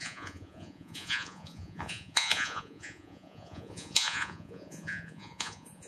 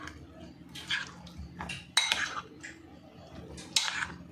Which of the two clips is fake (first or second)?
first